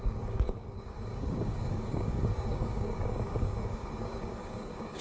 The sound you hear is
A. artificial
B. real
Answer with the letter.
A